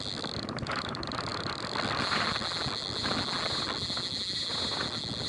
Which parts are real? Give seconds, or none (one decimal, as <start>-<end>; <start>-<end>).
0.0-5.3